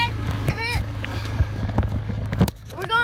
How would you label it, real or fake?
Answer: fake